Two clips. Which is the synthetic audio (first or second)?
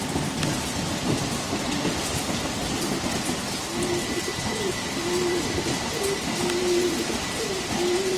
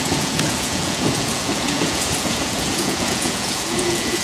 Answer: second